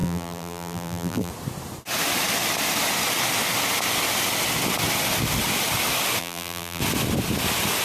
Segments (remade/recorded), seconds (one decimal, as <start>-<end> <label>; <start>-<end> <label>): 0.0-1.3 remade; 1.3-6.2 recorded; 6.2-6.8 remade; 6.8-7.8 recorded